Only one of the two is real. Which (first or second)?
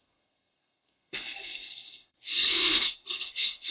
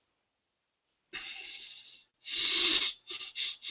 second